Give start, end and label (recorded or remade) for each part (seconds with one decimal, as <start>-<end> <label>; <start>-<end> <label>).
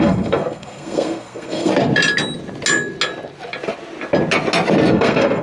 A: 0.0-1.7 remade; 1.7-4.9 recorded; 4.9-5.4 remade